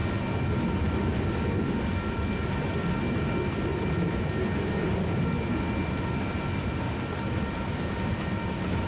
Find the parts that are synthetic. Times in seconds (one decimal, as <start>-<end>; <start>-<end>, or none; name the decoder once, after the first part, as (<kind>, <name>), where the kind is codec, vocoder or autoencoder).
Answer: none